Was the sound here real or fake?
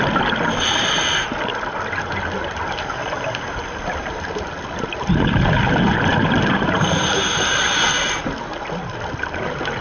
real